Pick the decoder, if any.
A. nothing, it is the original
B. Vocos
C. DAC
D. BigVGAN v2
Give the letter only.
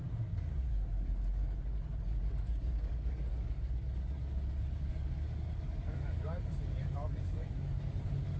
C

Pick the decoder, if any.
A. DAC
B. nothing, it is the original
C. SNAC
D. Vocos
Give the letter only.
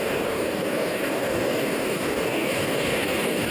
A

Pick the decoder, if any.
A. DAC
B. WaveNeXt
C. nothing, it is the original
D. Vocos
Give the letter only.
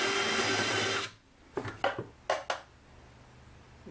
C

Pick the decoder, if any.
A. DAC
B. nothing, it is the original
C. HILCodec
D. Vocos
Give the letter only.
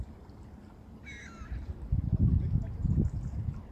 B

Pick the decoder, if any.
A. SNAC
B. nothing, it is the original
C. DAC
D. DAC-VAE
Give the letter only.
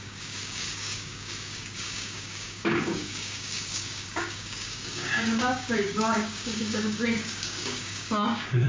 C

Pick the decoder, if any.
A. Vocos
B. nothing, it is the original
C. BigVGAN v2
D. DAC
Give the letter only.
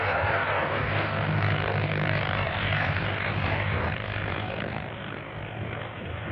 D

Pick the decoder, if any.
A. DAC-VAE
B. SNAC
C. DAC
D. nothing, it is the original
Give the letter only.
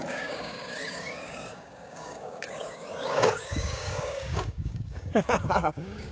C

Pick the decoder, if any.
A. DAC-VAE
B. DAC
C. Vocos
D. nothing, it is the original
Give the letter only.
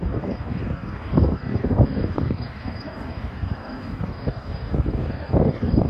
B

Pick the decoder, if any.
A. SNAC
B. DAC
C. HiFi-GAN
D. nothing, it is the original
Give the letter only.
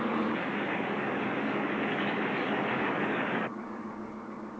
B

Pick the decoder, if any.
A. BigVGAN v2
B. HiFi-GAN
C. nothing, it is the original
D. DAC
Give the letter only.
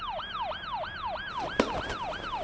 C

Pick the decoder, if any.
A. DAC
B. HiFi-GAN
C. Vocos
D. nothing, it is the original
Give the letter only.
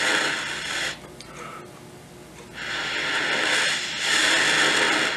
D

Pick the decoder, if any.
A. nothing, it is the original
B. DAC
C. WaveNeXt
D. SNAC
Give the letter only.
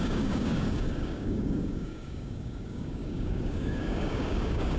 B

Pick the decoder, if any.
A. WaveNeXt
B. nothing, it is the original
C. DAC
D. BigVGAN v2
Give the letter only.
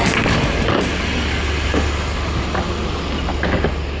B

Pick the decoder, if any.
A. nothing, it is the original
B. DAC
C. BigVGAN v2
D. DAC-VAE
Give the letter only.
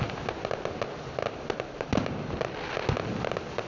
A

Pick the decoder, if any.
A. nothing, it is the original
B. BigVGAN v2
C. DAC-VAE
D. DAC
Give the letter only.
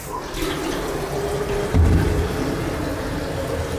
A